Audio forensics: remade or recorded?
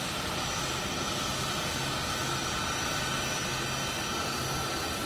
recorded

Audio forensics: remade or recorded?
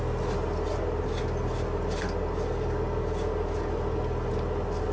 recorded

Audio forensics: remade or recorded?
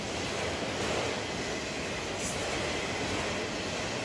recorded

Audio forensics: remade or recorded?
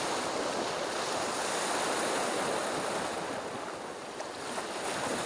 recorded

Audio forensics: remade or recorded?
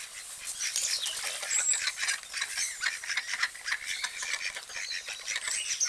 recorded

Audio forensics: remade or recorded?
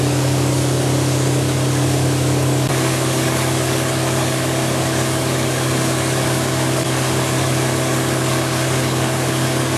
remade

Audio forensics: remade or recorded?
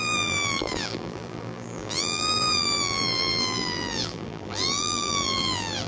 remade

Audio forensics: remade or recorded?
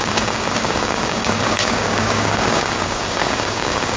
remade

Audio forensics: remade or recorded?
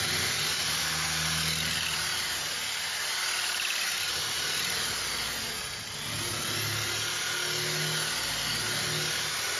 recorded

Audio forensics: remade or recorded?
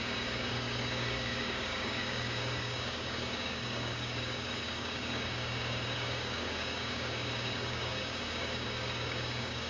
remade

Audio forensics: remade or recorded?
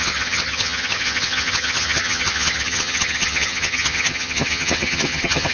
remade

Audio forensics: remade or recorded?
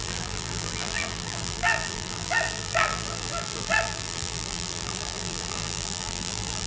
remade